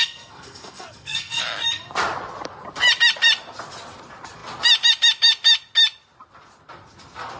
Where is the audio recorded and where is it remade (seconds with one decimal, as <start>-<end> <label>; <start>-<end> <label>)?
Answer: 0.0-1.4 remade; 1.4-7.4 recorded